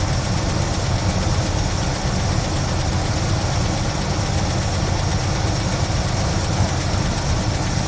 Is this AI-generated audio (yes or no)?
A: no